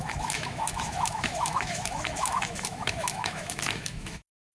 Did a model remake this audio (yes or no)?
yes